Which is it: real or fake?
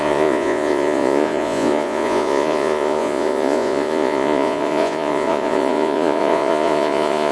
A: fake